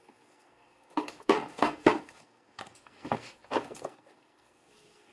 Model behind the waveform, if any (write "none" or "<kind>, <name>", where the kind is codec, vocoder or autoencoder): codec, SNAC